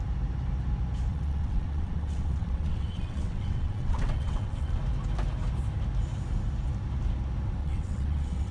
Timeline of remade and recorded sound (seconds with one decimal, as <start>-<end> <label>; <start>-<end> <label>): 0.0-1.1 recorded; 1.1-4.8 remade; 4.8-7.6 recorded; 7.6-8.5 remade